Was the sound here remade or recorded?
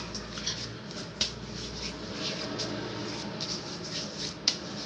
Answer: recorded